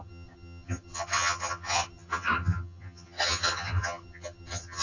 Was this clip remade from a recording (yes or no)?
yes